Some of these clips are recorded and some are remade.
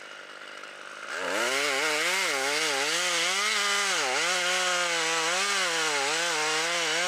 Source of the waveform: recorded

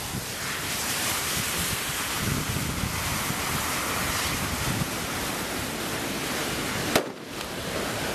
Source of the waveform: recorded